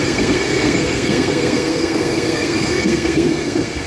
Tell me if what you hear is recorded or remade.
remade